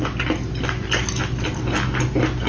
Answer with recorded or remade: recorded